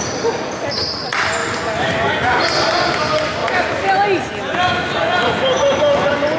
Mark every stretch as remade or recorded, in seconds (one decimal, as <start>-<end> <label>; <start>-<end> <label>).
0.0-1.4 recorded; 1.4-2.1 remade; 2.1-5.1 recorded; 5.1-5.8 remade; 5.8-6.4 recorded